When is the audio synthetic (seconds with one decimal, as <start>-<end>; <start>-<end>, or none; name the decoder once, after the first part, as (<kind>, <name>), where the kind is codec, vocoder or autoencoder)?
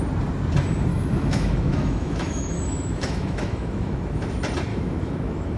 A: 0.9-4.3 (autoencoder, DAC-VAE); 4.7-5.6